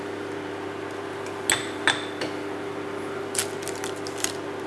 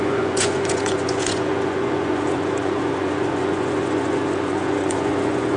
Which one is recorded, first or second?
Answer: first